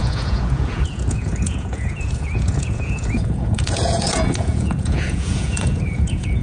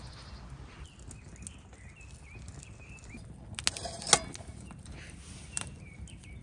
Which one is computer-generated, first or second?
first